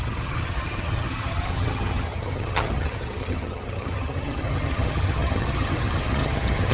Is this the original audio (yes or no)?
no